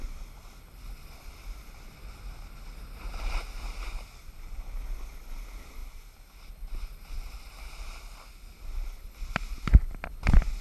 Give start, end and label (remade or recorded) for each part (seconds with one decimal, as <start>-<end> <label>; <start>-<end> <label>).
0.0-10.6 recorded